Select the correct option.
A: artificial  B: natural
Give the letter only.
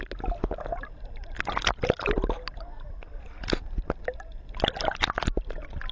B